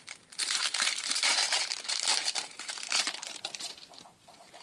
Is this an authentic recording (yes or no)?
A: no